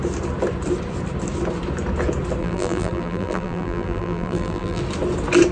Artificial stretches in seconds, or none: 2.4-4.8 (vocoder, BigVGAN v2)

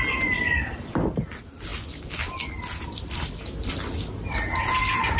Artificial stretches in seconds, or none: none

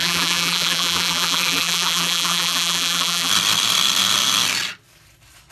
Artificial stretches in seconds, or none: 0.0-3.3 (vocoder, BigVGAN v2)

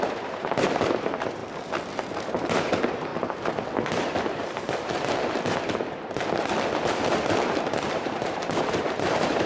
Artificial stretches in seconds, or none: 0.0-1.4 (vocoder, BigVGAN v2); 2.1-3.1; 7.9-9.5

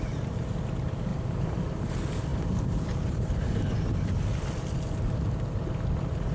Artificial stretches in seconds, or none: 1.1-1.9 (vocoder, BigVGAN v2); 2.3-3.3

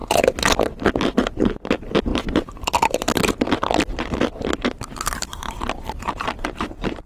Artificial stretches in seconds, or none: 0.9-7.1 (vocoder, BigVGAN v2)

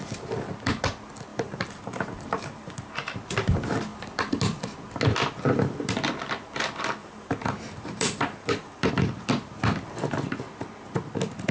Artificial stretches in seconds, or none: 1.3-2.9 (vocoder, BigVGAN v2); 7.0-8.9

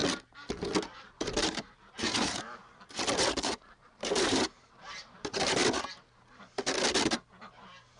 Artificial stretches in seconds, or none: 1.0-2.6 (vocoder, BigVGAN v2); 3.3-5.6; 7.3-8.0